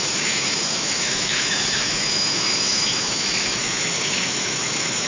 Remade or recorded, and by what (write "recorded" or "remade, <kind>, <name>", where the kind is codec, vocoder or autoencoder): remade, autoencoder, DAC-VAE